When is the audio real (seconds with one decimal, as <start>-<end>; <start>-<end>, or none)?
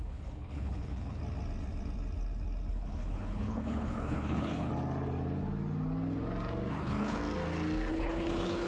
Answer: 1.2-2.7; 4.7-6.7; 7.2-7.9